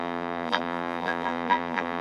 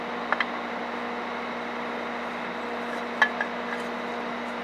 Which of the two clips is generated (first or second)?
first